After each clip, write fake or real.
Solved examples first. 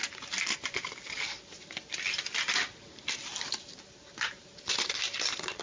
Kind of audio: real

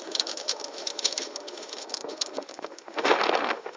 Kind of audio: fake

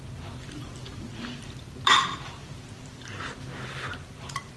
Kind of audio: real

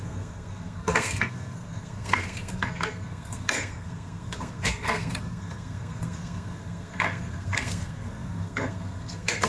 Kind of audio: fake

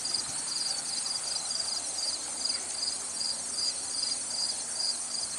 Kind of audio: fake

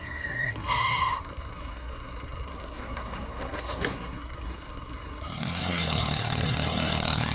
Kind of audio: fake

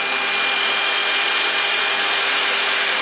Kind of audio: real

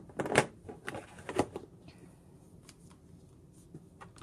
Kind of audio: real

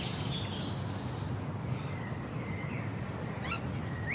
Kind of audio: real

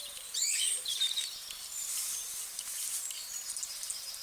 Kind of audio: real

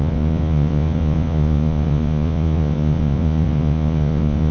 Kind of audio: fake